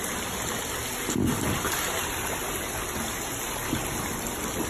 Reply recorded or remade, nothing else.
recorded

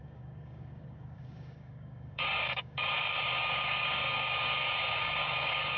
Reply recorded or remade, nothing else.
remade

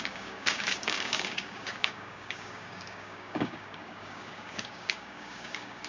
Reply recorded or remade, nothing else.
remade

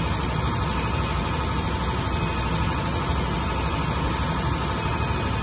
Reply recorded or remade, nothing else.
recorded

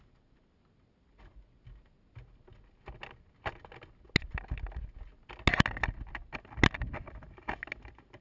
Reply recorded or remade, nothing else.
recorded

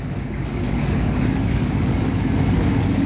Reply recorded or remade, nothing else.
remade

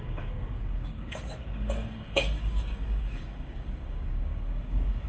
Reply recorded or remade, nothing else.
remade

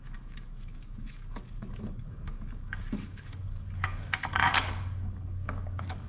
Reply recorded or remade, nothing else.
remade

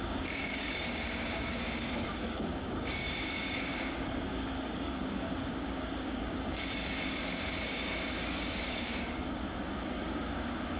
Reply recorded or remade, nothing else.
remade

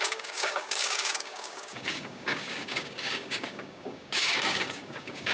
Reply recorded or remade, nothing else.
remade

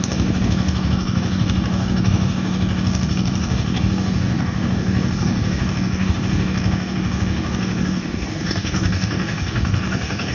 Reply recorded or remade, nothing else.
remade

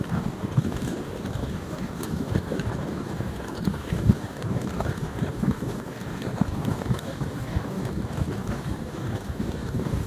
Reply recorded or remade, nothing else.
remade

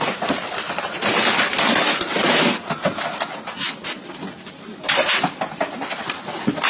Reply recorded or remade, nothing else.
recorded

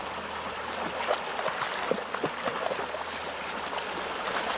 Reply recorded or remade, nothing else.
recorded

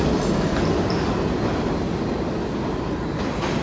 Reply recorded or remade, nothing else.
recorded